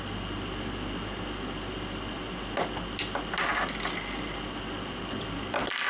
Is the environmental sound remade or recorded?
recorded